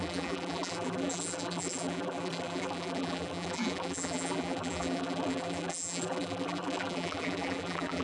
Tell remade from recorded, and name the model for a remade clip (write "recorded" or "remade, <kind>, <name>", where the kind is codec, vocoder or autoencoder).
remade, vocoder, BigVGAN v2